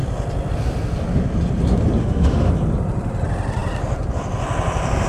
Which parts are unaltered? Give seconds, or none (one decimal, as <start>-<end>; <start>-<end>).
0.0-2.0; 2.5-5.1